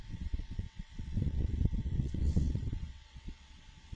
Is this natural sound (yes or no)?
no